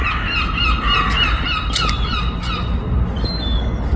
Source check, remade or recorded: recorded